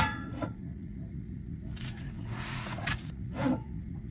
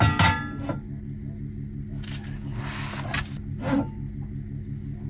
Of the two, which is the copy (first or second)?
first